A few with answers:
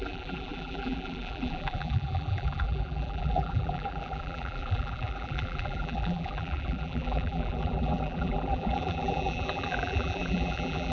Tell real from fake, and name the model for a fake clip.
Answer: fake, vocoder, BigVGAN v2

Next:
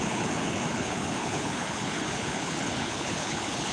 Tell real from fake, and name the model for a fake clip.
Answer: fake, codec, HILCodec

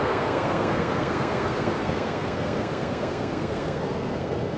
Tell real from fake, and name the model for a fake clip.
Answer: fake, codec, SNAC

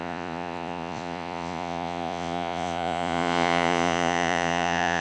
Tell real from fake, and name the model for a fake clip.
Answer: fake, vocoder, Vocos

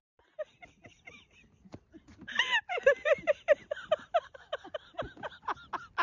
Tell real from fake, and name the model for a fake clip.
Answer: real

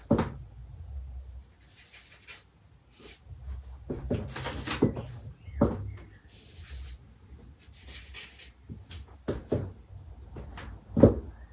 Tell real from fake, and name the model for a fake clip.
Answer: real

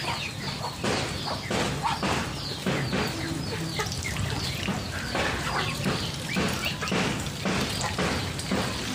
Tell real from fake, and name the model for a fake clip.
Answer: real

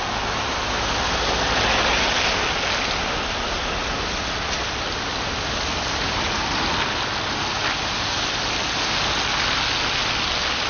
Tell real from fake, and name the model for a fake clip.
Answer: real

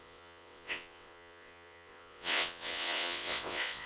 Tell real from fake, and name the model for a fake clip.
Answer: fake, vocoder, WaveNeXt